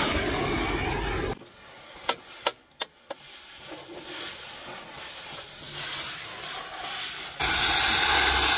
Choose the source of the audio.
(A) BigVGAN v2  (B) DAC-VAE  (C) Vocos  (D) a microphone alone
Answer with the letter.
D